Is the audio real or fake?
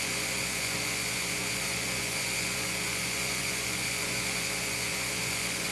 fake